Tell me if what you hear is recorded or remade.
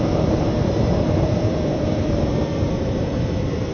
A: remade